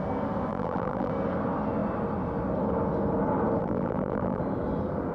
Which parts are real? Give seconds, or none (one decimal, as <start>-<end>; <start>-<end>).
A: 0.0-0.5; 1.1-3.6; 4.4-5.1